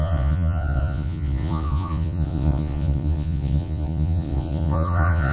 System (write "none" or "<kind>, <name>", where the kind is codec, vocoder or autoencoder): vocoder, Vocos